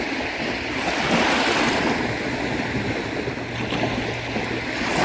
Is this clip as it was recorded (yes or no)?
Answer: yes